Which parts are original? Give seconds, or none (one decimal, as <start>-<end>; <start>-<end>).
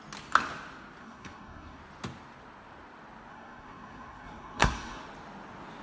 0.0-1.0; 1.8-3.3; 5.0-5.8